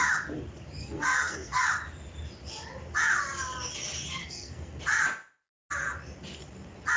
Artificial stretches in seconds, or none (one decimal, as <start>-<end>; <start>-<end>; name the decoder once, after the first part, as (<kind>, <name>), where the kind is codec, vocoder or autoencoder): 0.8-1.6 (codec, SNAC); 4.2-4.8